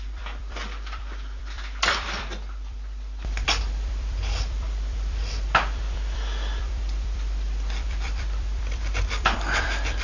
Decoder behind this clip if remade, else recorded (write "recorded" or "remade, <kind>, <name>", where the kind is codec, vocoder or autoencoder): remade, vocoder, BigVGAN v2